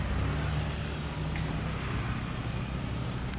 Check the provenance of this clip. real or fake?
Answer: real